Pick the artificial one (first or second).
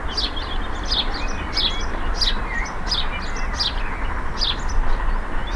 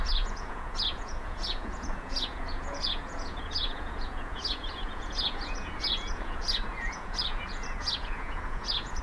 second